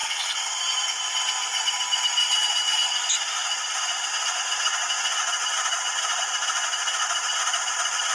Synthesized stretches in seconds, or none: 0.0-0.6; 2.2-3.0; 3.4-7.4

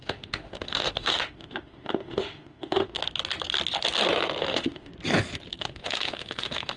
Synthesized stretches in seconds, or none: 0.0-3.0; 4.4-4.9; 5.6-6.8

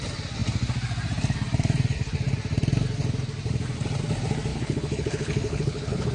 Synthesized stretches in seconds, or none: 4.5-6.1

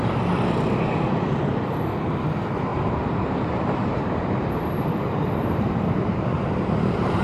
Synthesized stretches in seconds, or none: 2.7-7.2